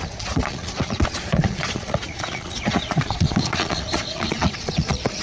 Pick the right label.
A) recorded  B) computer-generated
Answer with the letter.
B